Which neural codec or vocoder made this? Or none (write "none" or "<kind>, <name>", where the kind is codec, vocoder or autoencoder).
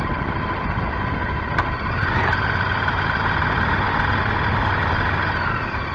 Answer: none